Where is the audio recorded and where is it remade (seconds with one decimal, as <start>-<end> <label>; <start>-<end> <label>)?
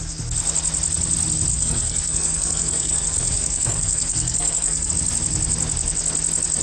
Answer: 0.0-1.5 recorded; 1.5-4.9 remade; 4.9-6.6 recorded